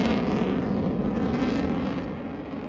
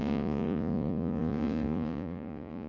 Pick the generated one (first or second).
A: second